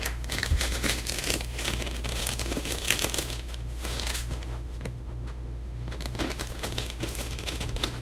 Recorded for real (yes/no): no